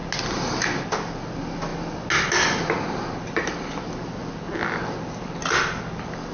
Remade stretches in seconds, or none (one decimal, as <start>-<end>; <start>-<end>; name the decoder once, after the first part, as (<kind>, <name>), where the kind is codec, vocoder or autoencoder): none